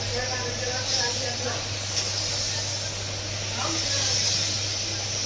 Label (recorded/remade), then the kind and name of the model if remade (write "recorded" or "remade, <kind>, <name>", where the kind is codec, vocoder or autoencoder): recorded